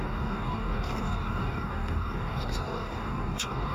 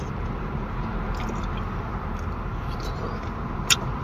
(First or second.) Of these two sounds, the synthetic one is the first